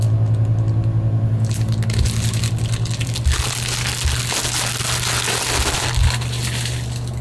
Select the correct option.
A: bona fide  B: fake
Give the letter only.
A